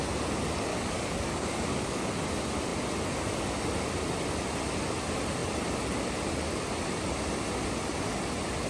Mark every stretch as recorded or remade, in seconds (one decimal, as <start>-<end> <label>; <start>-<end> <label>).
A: 0.0-0.7 recorded; 0.7-2.1 remade; 2.1-8.7 recorded

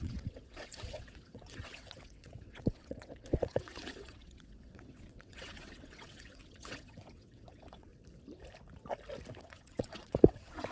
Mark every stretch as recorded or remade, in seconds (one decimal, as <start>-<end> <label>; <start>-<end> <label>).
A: 0.0-7.9 remade; 7.9-9.4 recorded; 9.4-10.7 remade